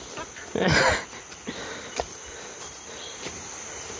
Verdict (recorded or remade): recorded